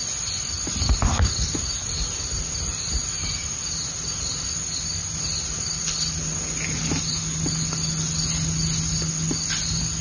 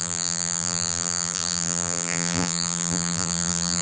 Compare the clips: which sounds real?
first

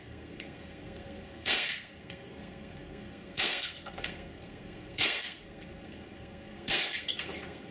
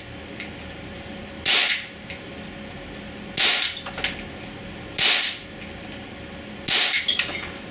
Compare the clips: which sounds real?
second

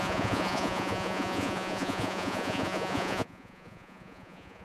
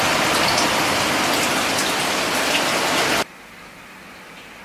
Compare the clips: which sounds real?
second